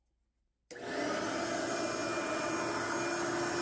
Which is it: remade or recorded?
recorded